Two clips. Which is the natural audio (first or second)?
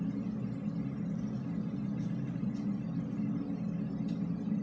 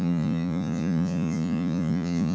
first